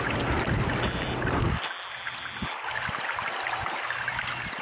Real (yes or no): yes